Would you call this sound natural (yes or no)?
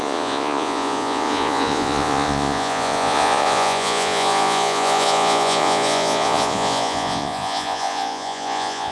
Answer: no